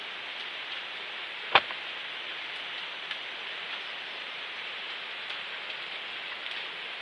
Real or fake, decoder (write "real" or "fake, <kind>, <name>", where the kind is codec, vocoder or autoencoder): real